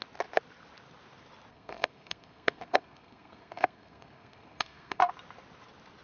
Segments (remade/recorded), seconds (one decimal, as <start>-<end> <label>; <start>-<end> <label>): 0.0-1.5 recorded; 1.5-5.1 remade; 5.1-6.0 recorded